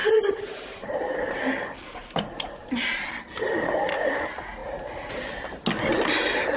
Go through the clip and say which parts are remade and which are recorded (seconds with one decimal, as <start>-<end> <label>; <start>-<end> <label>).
0.0-1.5 remade; 1.5-2.0 recorded; 2.0-3.1 remade; 3.1-6.6 recorded